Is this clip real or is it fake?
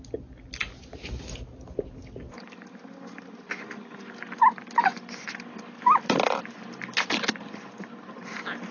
real